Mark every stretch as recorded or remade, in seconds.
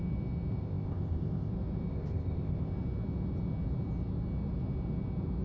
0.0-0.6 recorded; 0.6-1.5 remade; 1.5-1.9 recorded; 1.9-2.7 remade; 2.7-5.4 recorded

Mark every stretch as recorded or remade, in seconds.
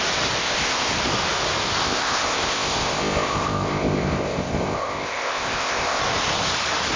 0.0-0.4 recorded; 0.4-0.9 remade; 0.9-1.8 recorded; 1.8-6.0 remade; 6.0-7.0 recorded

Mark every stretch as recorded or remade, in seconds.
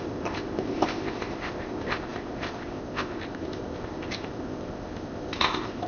0.0-5.9 remade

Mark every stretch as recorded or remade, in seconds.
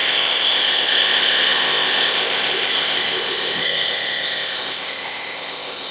0.0-5.9 remade